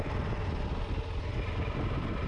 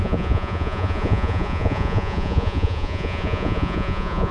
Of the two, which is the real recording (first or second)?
first